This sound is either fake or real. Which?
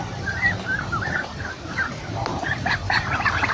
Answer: fake